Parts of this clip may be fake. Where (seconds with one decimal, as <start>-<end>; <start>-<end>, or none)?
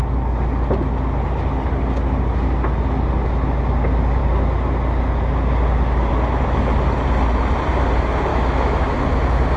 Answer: 8.3-9.0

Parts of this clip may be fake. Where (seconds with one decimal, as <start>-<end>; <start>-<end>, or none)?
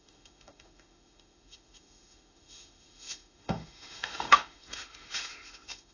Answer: 0.0-5.9